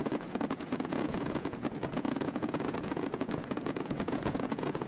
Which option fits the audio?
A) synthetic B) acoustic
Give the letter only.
A